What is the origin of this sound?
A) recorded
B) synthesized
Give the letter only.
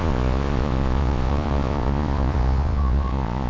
B